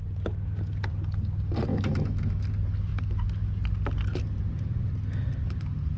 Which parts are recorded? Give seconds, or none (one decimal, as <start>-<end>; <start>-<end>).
0.0-1.7; 2.4-6.0